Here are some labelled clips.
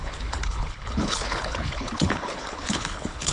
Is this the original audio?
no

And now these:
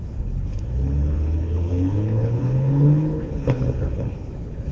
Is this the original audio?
no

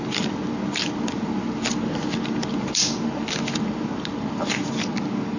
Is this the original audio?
yes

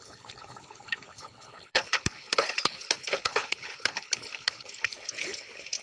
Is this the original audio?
no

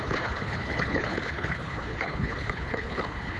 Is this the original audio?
no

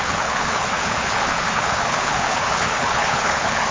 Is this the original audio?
no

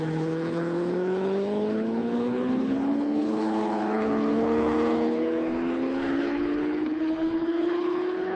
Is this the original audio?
no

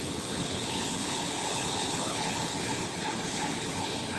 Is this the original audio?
no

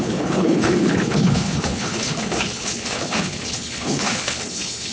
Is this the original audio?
no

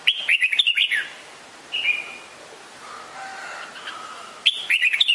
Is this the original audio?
yes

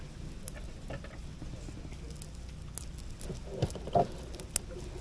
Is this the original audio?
yes